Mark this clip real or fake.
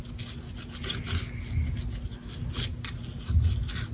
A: real